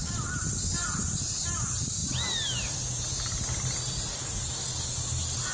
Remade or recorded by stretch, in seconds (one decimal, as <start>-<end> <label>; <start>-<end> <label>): 0.0-5.5 recorded

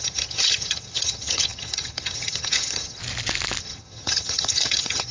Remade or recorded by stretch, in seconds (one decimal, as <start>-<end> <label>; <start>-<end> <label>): 0.0-3.0 remade; 3.0-3.6 recorded; 3.6-5.1 remade

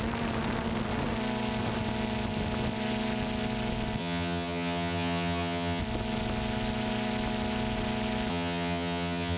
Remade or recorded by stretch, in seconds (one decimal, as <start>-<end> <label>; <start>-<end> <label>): 0.0-4.0 recorded; 4.0-5.8 remade; 5.8-8.3 recorded; 8.3-9.4 remade

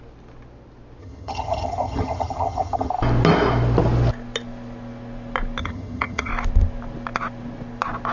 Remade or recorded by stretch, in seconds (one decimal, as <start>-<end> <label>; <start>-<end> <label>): 0.0-1.0 recorded; 1.0-2.9 remade; 2.9-5.6 recorded; 5.6-6.3 remade; 6.3-8.1 recorded